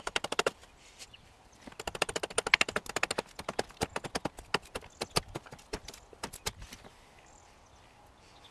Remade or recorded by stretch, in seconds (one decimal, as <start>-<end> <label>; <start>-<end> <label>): 0.0-8.5 recorded